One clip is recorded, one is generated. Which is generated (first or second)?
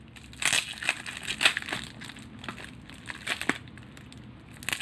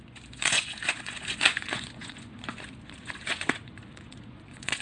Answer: second